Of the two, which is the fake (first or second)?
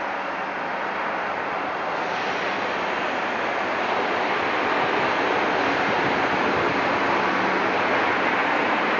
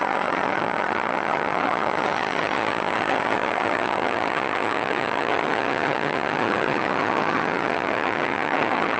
second